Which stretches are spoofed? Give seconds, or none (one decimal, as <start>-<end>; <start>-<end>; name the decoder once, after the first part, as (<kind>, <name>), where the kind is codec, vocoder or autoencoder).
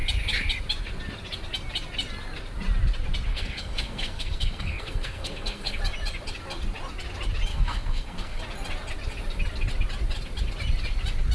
3.3-5.8 (codec, SNAC); 7.5-8.4